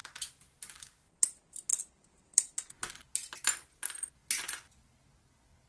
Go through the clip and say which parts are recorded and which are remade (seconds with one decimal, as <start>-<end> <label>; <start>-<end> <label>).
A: 0.0-0.7 remade; 0.7-1.7 recorded; 1.7-2.9 remade; 2.9-5.7 recorded